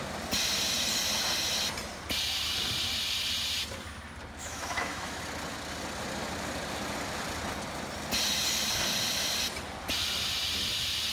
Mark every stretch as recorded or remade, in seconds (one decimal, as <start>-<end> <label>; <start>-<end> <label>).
0.0-4.4 recorded; 4.4-5.2 remade; 5.2-11.1 recorded